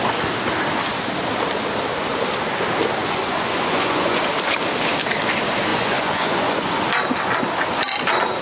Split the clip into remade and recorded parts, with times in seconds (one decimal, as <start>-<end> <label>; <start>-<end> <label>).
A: 0.0-3.0 recorded; 3.0-4.2 remade; 4.2-5.7 recorded; 5.7-6.7 remade; 6.7-8.4 recorded